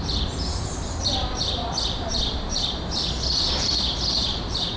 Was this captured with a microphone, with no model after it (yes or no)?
no